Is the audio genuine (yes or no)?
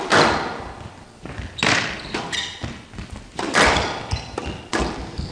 yes